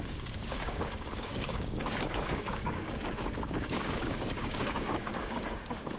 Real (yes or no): no